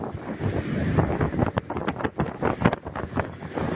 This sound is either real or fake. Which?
real